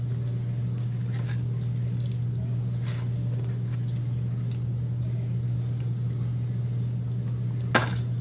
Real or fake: real